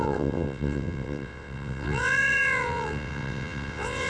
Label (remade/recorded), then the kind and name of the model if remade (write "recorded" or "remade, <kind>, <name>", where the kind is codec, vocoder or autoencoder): remade, vocoder, WaveNeXt